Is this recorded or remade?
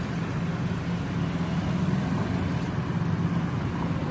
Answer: recorded